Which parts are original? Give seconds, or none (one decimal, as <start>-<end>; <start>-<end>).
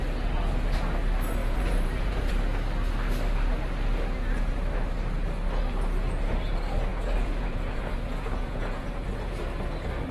0.0-1.4; 2.3-6.9; 9.4-10.1